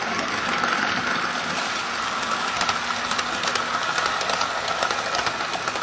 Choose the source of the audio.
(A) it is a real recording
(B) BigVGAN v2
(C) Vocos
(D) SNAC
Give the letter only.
A